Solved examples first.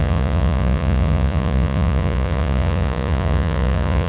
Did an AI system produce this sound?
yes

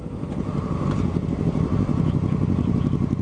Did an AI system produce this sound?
no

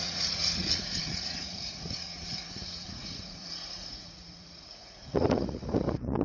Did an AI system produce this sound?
yes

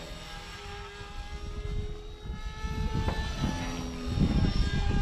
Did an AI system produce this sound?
no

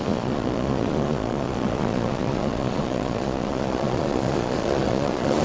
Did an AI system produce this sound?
yes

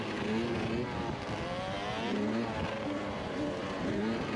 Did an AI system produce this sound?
no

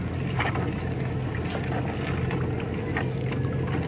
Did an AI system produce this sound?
no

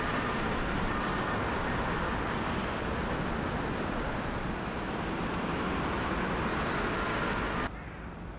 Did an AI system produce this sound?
no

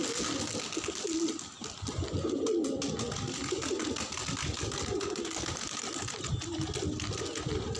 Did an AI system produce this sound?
no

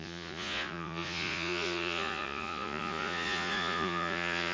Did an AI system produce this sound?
yes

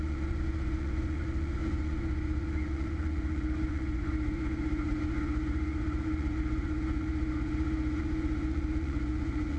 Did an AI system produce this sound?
yes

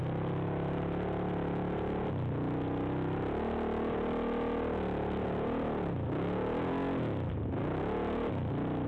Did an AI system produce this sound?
no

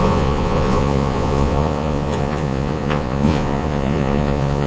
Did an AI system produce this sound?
yes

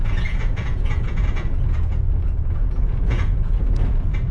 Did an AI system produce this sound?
yes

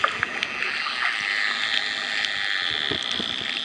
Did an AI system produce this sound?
no